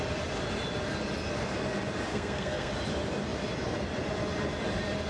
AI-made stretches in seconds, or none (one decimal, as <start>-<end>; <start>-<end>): 2.1-2.7